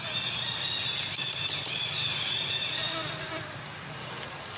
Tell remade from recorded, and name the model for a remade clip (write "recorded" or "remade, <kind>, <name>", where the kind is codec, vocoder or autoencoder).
recorded